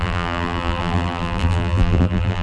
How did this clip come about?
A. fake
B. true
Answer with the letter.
A